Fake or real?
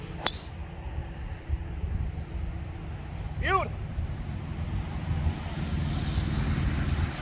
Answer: real